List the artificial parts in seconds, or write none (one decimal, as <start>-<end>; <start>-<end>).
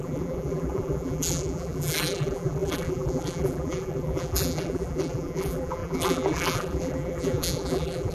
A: 0.0-8.1